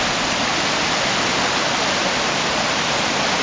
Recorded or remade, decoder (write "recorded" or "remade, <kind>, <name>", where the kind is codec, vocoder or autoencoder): recorded